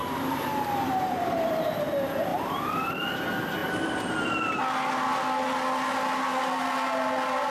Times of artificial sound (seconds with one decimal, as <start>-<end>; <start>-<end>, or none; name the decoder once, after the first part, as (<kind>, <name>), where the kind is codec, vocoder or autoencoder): 0.0-1.8 (vocoder, BigVGAN v2); 2.3-2.9